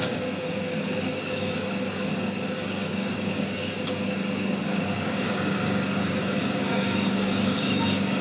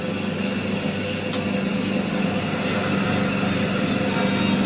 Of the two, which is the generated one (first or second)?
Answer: first